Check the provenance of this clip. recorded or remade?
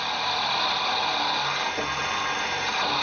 recorded